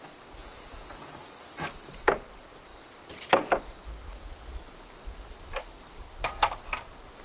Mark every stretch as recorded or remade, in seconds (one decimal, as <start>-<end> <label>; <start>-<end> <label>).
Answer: 0.0-0.4 recorded; 0.4-1.0 remade; 1.0-7.2 recorded